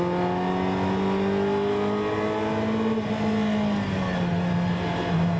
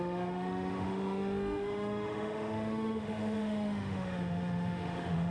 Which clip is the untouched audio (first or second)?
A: first